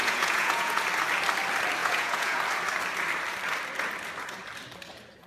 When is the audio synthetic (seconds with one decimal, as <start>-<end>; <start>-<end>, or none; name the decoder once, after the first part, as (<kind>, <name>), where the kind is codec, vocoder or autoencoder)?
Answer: 0.0-0.8 (vocoder, Vocos); 1.8-2.4